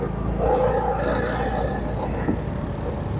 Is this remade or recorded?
recorded